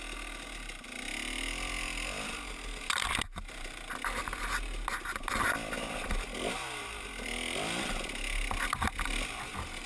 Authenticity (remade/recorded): recorded